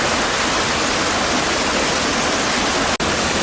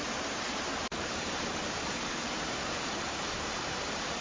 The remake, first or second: second